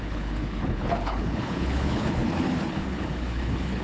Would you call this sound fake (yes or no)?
yes